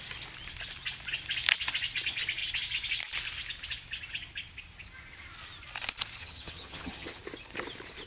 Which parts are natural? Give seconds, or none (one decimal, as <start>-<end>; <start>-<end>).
0.0-6.2; 7.2-8.1

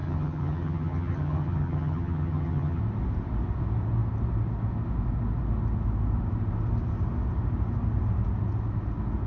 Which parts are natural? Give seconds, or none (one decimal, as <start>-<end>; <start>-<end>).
2.8-9.3

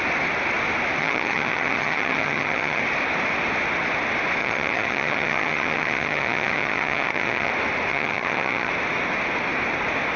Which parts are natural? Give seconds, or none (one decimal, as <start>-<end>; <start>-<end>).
0.0-1.0; 2.8-4.4; 7.5-7.9; 8.7-10.2

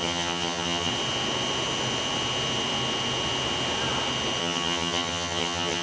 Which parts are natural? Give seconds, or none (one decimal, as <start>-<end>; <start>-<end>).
0.9-4.4

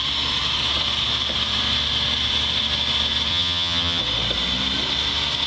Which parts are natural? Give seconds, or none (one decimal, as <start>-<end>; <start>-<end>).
0.0-3.3; 4.0-5.5

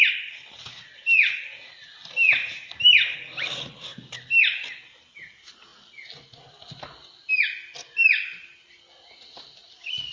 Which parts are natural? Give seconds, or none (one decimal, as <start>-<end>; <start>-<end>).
0.0-10.1